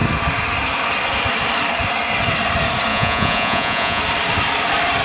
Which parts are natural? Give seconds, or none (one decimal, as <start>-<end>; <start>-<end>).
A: 0.0-2.9; 4.0-5.0

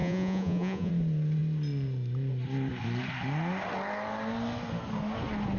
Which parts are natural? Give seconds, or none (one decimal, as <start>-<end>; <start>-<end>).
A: 0.9-5.6

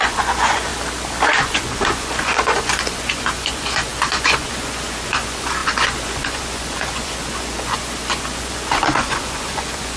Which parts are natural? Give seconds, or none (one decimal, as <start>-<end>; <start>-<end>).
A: 0.7-1.4

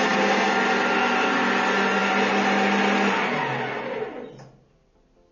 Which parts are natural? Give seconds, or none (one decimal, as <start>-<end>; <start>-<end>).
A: 0.0-5.3

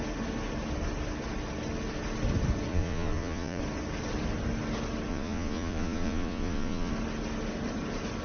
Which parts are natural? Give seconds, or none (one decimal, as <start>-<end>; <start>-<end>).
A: 0.0-2.7; 3.6-5.1; 6.9-8.2

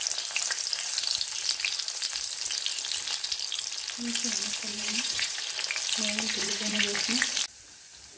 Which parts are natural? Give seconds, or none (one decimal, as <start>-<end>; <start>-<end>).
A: 0.0-4.7; 5.4-6.3; 6.8-8.2